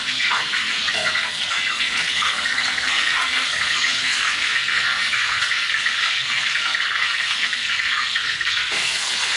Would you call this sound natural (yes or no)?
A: no